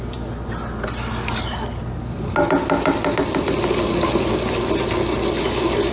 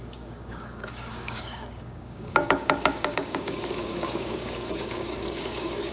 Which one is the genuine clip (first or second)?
first